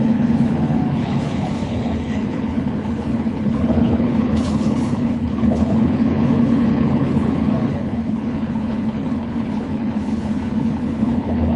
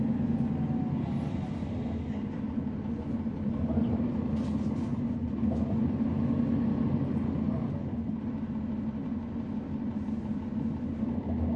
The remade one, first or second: first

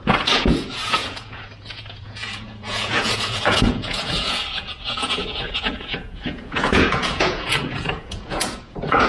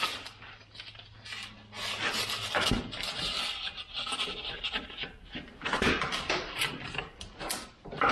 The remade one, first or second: first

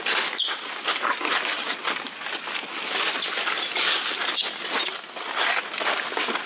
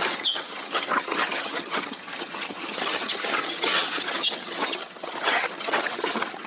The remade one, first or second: second